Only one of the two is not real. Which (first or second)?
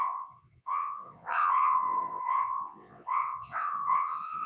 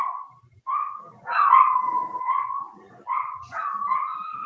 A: first